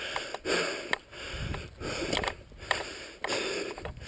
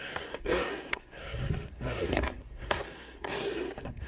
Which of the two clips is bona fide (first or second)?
first